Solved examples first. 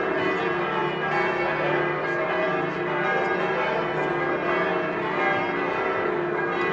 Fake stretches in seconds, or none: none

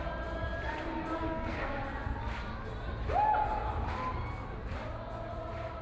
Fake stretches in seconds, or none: 1.2-1.8

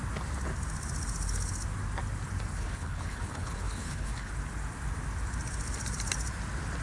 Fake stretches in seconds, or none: 2.5-4.3